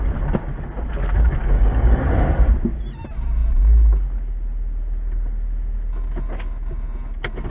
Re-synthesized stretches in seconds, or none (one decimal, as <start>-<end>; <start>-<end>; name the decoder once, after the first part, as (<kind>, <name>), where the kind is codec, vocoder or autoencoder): 1.4-2.0 (codec, DAC)